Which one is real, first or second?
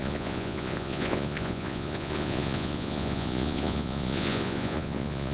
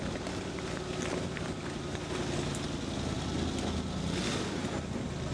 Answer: second